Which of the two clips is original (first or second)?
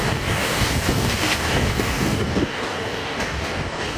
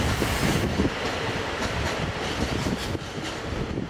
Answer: second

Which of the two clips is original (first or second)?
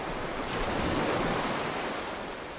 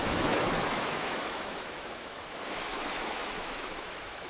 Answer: first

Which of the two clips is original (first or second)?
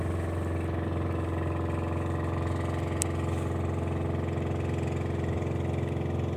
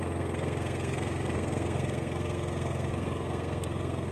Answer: first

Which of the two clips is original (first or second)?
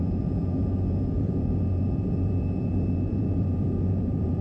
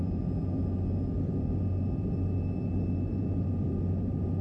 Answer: second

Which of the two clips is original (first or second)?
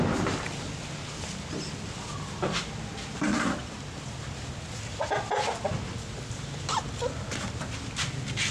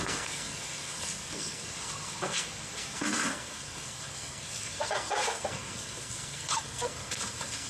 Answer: first